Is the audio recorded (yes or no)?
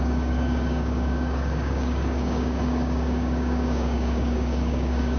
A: no